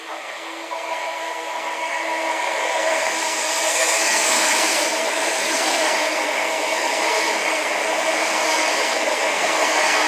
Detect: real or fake fake